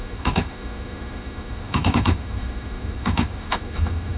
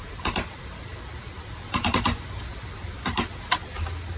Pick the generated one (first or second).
first